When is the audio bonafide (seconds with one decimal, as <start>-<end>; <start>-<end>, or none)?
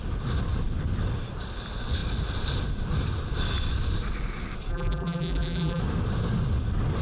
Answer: 0.0-4.7; 5.8-7.0